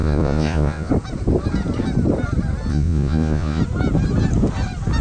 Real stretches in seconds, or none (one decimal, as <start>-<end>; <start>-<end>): 0.9-2.7; 3.6-5.0